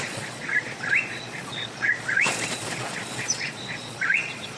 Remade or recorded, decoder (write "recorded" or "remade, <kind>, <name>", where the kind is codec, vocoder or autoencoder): remade, vocoder, Vocos